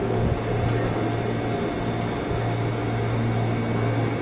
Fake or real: real